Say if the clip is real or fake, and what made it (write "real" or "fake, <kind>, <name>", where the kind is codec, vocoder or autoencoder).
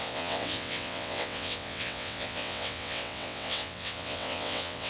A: fake, vocoder, WaveNeXt